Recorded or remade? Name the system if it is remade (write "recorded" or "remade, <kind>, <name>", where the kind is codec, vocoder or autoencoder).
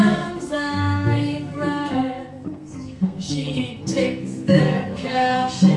remade, codec, SNAC